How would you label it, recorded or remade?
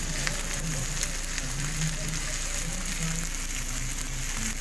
recorded